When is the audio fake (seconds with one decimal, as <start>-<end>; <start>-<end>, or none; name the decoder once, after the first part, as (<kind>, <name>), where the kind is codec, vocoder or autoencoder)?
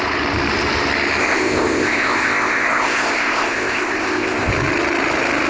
1.2-4.5 (codec, ZipCodec)